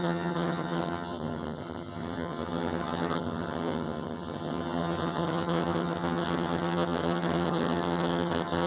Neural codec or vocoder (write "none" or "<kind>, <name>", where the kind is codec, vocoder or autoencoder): vocoder, HiFi-GAN